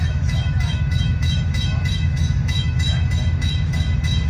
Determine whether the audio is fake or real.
fake